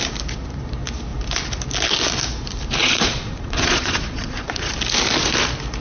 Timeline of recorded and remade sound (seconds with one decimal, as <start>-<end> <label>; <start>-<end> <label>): 0.0-2.8 recorded; 2.8-4.7 remade; 4.7-5.8 recorded